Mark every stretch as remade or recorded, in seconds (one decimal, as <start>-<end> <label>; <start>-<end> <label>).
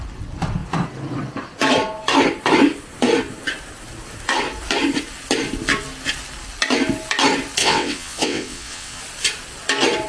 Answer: 0.0-7.6 recorded; 7.6-9.0 remade; 9.0-10.1 recorded